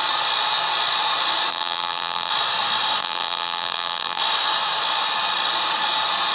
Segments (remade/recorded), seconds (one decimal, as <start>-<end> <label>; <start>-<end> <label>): 0.0-1.5 recorded; 1.5-2.3 remade; 2.3-3.0 recorded; 3.0-4.2 remade; 4.2-6.3 recorded